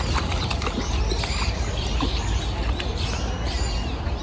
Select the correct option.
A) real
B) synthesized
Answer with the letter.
A